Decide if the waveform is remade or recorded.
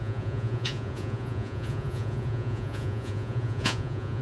remade